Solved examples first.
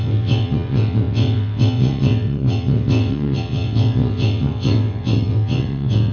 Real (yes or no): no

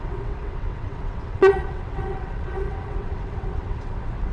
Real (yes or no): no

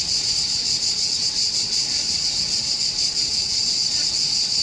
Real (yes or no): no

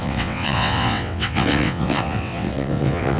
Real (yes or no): no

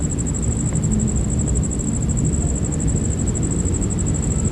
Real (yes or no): yes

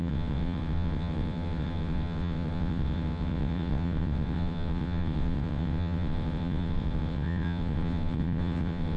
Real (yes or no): no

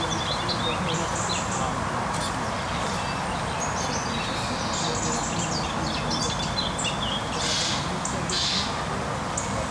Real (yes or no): yes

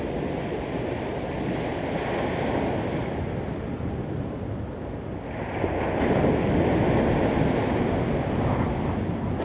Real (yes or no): yes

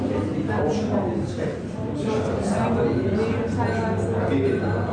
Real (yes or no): yes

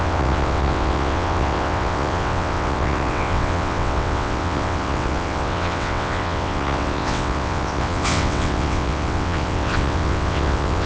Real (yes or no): no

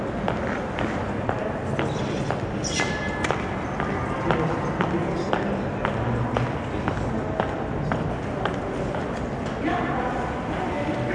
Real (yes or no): yes